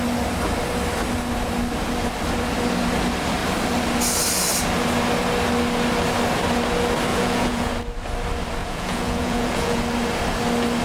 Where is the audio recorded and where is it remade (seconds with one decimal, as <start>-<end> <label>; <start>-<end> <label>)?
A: 0.0-7.1 recorded; 7.1-7.7 remade; 7.7-8.6 recorded; 8.6-9.8 remade; 9.8-10.8 recorded